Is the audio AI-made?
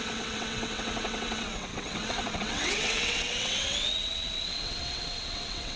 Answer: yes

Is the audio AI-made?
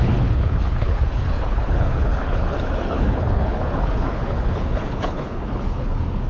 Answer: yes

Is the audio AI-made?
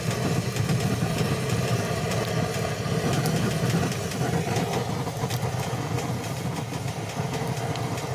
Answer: no